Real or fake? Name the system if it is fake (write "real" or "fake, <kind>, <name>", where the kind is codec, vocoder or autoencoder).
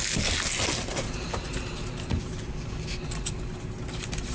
real